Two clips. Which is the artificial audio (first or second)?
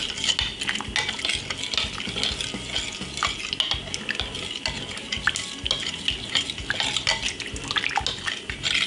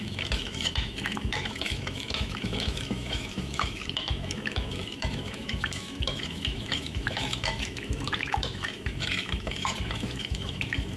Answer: second